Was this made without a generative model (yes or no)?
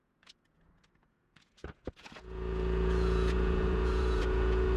no